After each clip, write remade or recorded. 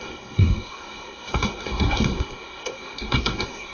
remade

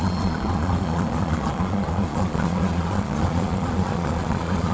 remade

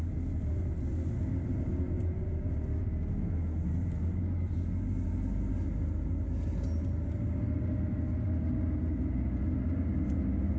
recorded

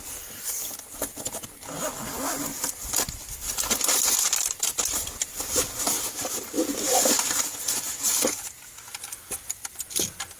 recorded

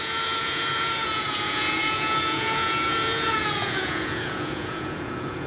remade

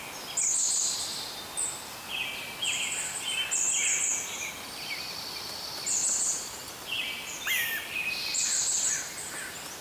recorded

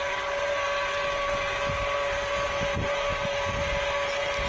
recorded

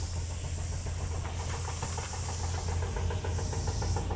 recorded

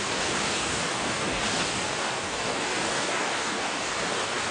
remade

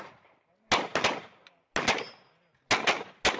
recorded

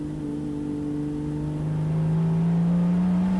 recorded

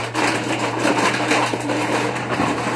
remade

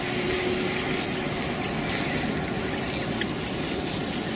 recorded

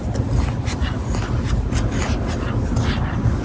recorded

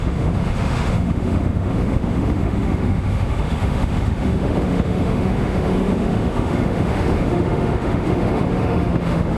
remade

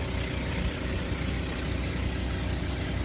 recorded